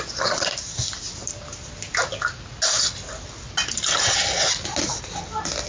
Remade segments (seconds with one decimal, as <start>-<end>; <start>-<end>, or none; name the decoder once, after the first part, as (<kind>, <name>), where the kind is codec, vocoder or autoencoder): none